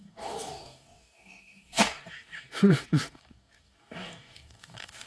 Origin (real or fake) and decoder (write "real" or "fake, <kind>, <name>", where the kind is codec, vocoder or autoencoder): fake, codec, DAC